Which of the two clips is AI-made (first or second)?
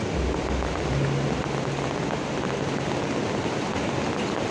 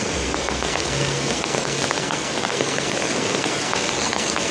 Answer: second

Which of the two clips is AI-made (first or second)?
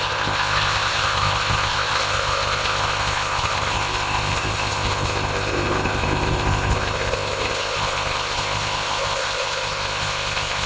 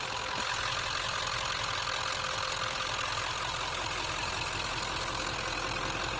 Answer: first